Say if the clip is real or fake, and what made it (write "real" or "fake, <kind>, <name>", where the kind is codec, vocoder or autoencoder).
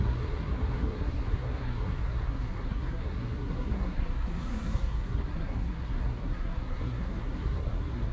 fake, codec, SNAC